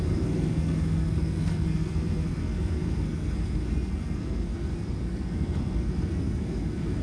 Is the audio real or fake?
fake